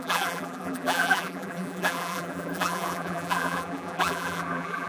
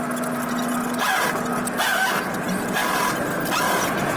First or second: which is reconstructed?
first